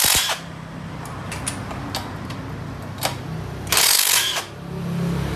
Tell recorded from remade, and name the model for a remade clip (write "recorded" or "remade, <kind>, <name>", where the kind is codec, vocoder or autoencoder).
recorded